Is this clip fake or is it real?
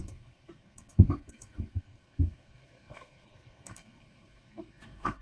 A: fake